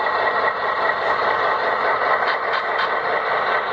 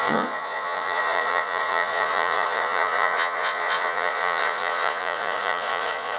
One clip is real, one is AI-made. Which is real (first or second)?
first